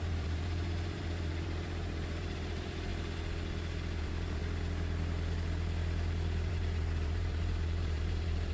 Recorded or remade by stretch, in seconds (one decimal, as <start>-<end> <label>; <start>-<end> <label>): 0.0-2.9 remade; 2.9-4.0 recorded; 4.0-4.4 remade; 4.4-6.5 recorded; 6.5-8.5 remade